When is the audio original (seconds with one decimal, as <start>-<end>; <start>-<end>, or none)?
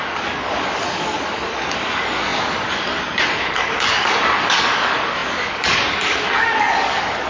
none